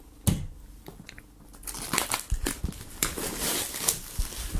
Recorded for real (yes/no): yes